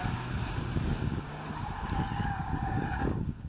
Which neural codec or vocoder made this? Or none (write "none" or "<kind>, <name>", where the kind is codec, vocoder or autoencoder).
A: codec, DAC